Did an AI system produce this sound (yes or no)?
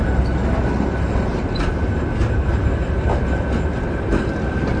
no